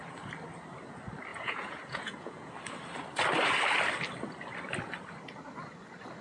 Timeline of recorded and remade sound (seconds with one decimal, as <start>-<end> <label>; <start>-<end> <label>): 0.0-1.3 recorded; 1.3-2.5 remade; 2.5-6.2 recorded